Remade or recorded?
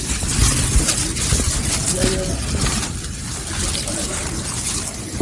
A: remade